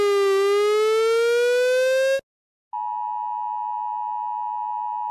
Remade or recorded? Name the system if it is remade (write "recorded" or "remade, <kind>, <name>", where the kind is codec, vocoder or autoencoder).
recorded